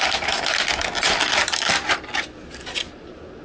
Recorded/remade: recorded